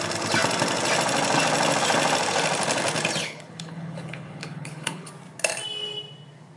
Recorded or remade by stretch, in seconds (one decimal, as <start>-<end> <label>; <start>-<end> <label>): 0.0-3.2 recorded; 3.2-5.1 remade; 5.1-6.6 recorded